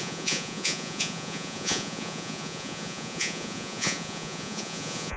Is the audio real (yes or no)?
no